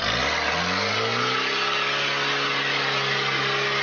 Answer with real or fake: real